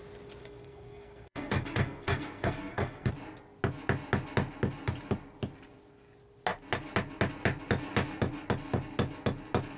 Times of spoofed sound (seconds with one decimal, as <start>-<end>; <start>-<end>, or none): 0.4-3.1

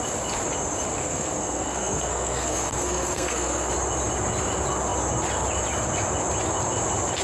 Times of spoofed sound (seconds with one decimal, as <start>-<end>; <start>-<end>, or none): 1.0-3.7

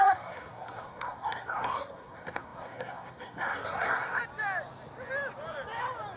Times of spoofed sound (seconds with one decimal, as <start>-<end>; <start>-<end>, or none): 0.0-4.2

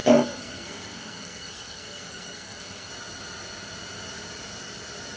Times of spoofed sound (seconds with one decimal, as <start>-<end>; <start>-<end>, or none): 0.0-2.9

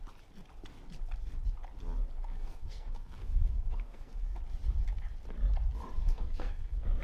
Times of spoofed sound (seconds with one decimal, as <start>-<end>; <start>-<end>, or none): 2.3-4.4; 6.0-7.0

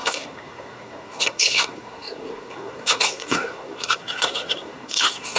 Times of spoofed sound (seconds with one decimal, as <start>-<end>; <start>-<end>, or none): 0.0-5.4

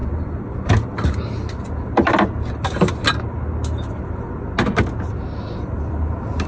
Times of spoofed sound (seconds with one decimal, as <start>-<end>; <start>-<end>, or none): none

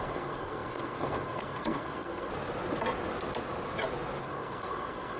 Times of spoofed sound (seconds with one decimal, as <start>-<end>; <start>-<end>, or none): 0.0-2.3; 4.2-5.2